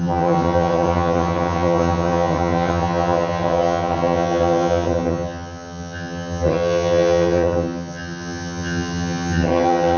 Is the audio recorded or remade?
remade